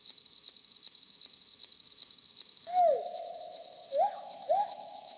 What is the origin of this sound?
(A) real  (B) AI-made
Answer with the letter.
B